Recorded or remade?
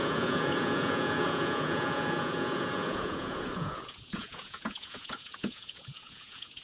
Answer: remade